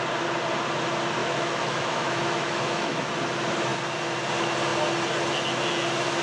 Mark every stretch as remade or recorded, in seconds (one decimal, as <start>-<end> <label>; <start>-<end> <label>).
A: 0.0-1.2 recorded; 1.2-3.1 remade; 3.1-6.2 recorded